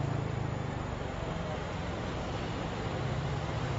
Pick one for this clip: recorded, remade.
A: recorded